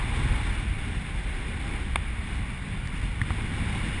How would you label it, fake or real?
real